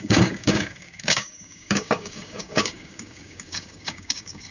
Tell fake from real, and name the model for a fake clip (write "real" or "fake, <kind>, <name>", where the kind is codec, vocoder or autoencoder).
fake, codec, DAC